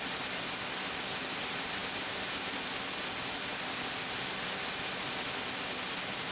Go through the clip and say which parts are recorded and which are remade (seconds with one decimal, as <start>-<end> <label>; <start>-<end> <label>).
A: 0.0-6.3 recorded